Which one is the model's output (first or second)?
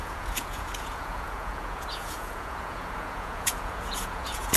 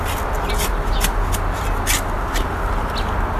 first